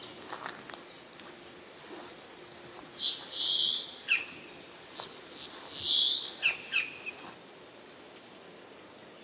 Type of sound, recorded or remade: recorded